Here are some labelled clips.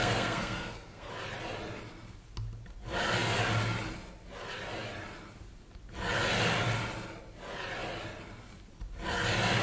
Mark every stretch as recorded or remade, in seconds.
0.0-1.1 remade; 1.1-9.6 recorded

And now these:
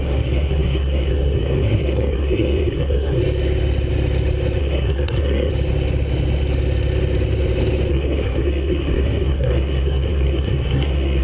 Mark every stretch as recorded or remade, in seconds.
0.0-3.2 remade; 3.2-4.6 recorded; 4.6-5.5 remade; 5.5-7.9 recorded; 7.9-11.2 remade

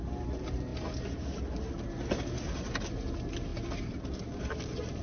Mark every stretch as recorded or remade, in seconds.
0.0-5.0 recorded

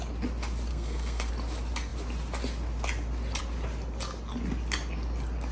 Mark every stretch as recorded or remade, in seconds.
0.0-0.7 recorded; 0.7-1.3 remade; 1.3-5.5 recorded

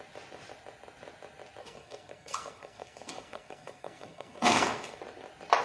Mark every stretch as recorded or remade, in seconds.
0.0-1.6 recorded; 1.6-5.0 remade; 5.0-5.6 recorded

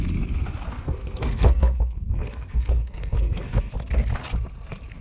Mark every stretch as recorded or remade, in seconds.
0.0-0.7 recorded; 0.7-3.7 remade; 3.7-5.0 recorded

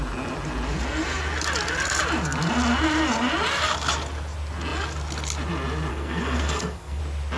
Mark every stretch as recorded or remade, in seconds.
0.0-5.9 recorded; 5.9-7.0 remade; 7.0-7.4 recorded

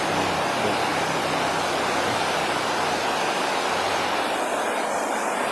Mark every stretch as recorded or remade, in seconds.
0.0-5.5 recorded